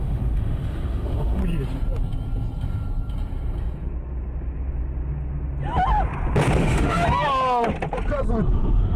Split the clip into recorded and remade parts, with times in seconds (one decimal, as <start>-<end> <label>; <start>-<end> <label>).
0.0-1.4 remade; 1.4-6.6 recorded; 6.6-7.0 remade; 7.0-8.5 recorded; 8.5-9.0 remade